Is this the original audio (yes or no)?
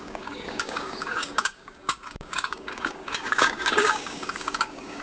no